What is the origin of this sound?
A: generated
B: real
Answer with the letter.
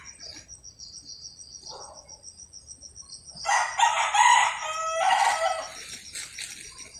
B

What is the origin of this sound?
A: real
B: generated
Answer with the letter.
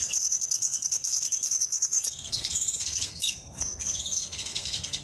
B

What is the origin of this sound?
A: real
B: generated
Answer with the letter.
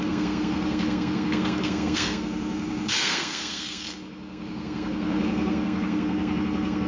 B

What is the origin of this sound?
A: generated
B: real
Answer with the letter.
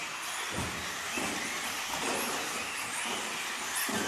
B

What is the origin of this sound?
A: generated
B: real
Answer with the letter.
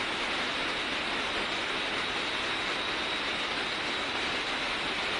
B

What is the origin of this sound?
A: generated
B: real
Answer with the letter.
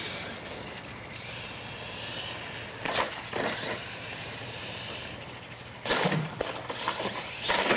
B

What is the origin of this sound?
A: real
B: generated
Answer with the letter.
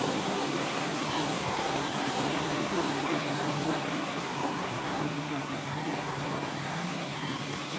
B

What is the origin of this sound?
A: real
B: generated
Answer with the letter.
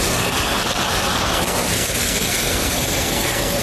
B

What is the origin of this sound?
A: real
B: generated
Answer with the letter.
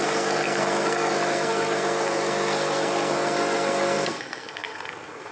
B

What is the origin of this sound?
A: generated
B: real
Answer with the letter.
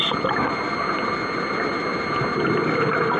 B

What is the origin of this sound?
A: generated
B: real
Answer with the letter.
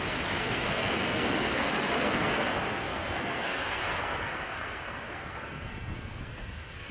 A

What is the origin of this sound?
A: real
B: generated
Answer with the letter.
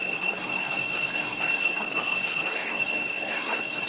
B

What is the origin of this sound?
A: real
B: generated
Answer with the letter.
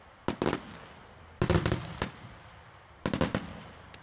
A